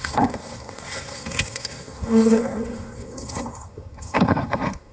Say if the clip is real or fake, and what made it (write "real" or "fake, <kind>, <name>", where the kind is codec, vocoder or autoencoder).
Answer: fake, codec, SNAC